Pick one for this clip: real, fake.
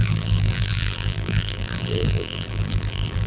fake